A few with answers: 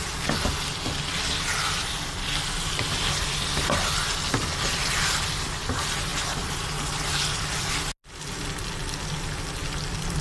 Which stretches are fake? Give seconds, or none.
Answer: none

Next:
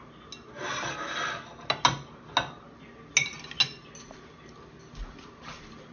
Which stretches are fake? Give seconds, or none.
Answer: none

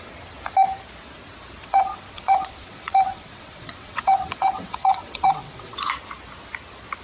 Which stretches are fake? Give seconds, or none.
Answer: 1.6-5.8

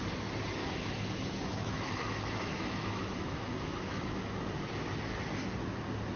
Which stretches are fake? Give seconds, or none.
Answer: 0.6-4.3

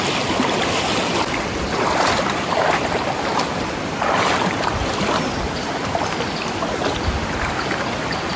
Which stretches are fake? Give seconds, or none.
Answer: 0.0-3.3; 4.0-8.4